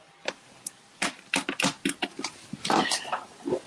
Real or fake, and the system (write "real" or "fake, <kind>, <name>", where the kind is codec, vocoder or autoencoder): real